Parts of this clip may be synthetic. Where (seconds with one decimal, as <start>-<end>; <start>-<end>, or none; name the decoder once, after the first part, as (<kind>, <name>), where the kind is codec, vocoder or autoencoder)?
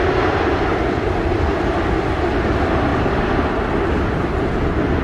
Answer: 0.7-1.4 (vocoder, BigVGAN v2); 2.9-3.9